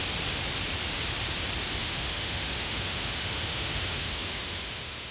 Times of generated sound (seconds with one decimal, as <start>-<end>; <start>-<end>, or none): 1.8-5.1